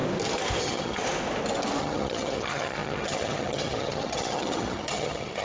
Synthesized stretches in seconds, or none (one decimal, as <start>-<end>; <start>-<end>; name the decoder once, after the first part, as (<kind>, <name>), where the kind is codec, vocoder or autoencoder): 0.6-1.0 (vocoder, HiFi-GAN); 1.8-5.4